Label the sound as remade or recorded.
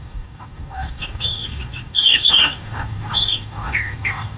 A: remade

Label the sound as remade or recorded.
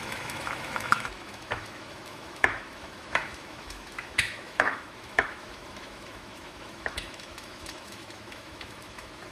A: remade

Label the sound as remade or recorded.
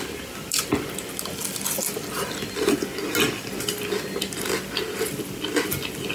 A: recorded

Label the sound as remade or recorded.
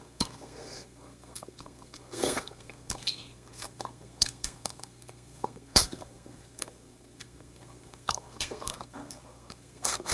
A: remade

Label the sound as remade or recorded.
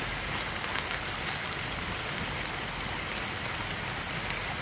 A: recorded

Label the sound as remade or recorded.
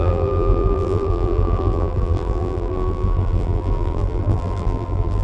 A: remade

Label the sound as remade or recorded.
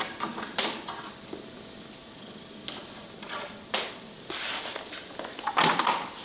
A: recorded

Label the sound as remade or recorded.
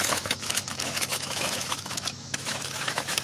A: remade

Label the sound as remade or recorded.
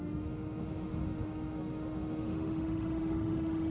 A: remade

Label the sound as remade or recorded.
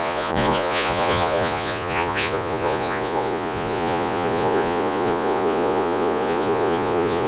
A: remade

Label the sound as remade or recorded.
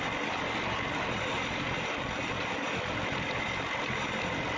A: recorded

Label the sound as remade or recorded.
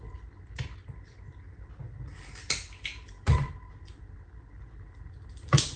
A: recorded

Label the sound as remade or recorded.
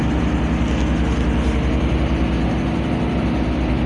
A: recorded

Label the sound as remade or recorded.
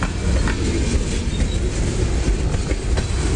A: recorded